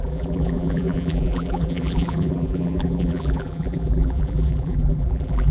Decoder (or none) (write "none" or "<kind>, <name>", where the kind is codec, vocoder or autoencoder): vocoder, BigVGAN v2